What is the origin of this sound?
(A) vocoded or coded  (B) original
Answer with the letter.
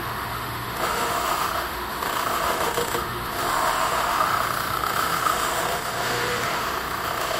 A